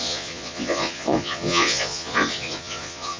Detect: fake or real fake